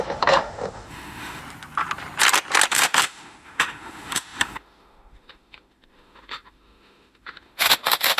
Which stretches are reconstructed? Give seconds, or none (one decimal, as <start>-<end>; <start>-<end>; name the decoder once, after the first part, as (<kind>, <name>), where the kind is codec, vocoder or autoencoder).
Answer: 0.0-1.4 (autoencoder, DAC-VAE); 2.7-8.2